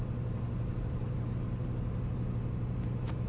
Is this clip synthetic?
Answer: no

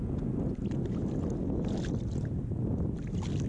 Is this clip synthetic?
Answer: no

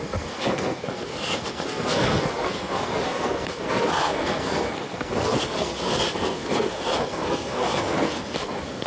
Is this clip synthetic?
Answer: yes